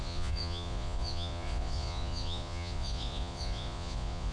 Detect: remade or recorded remade